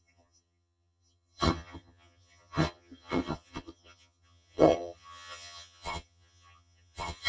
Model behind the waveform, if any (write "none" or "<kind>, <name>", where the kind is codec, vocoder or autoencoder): vocoder, HiFi-GAN